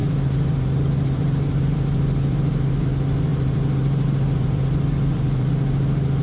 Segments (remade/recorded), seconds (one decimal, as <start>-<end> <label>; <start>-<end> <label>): 0.0-2.9 remade; 2.9-3.3 recorded; 3.3-5.5 remade; 5.5-6.2 recorded